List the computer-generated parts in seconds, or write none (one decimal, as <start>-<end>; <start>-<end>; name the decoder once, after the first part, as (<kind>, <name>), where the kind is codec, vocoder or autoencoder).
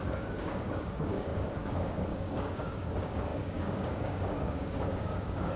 0.0-5.6 (codec, DAC)